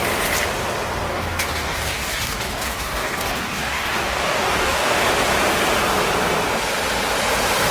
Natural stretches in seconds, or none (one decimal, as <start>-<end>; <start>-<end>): 0.0-1.1; 5.0-7.7